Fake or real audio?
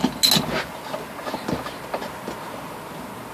real